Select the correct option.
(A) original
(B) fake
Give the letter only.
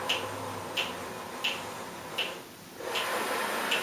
A